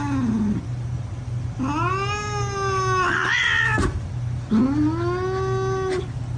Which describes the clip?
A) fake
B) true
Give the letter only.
B